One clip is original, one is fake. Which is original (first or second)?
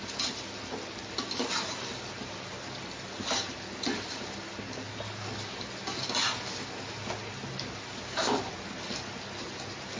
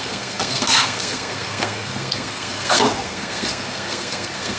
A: first